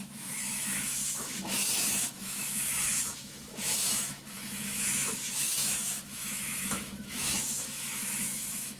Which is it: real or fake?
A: fake